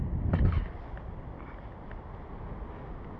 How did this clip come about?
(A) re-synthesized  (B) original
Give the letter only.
B